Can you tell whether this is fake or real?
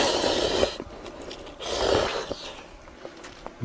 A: real